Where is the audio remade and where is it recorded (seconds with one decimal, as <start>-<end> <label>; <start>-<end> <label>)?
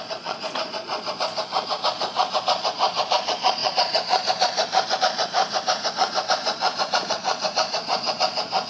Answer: 0.0-5.4 remade; 5.4-5.9 recorded; 5.9-8.7 remade